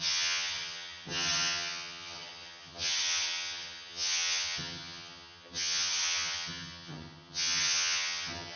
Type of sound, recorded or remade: remade